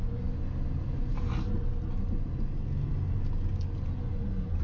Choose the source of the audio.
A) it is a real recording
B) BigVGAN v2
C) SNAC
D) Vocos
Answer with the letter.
A